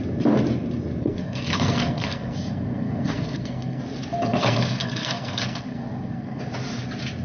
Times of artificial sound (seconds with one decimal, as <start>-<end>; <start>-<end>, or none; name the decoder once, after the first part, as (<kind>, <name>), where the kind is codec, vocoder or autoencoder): 1.0-3.8 (codec, SNAC); 4.3-6.4